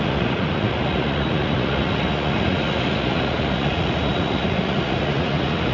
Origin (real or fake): fake